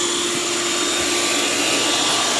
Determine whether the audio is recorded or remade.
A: recorded